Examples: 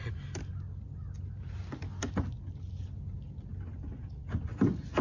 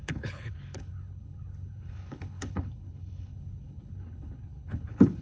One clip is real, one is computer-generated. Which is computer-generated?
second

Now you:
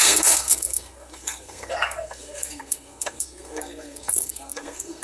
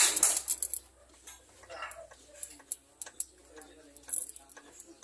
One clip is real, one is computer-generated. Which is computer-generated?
first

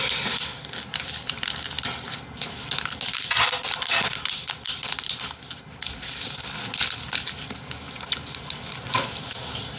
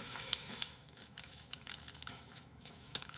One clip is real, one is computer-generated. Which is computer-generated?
second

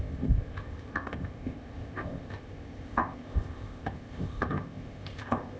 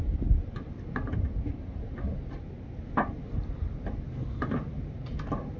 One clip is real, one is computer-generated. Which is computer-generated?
first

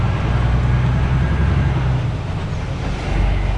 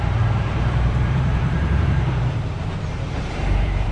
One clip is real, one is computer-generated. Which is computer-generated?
second